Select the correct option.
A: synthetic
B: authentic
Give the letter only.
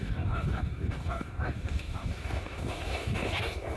A